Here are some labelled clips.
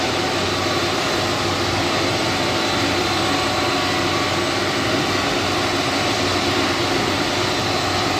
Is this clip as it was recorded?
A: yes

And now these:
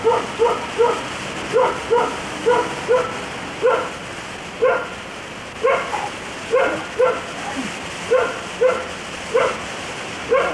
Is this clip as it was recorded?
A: yes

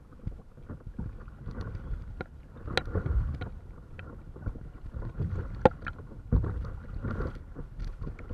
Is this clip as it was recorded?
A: yes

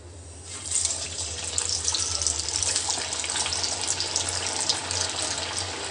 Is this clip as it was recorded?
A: yes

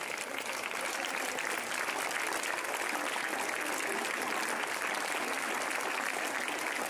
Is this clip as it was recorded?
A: yes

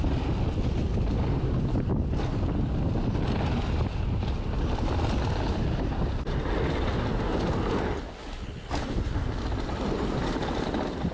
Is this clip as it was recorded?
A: yes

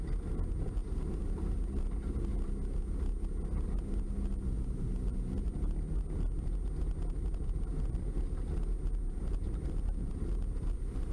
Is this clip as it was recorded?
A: yes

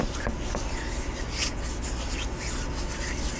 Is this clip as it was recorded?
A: yes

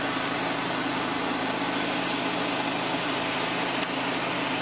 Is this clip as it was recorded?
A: yes